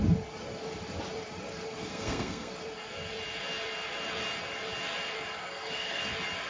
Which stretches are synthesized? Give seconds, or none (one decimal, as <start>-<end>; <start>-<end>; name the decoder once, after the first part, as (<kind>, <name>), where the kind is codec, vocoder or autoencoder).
1.8-2.5 (codec, SNAC); 5.4-6.0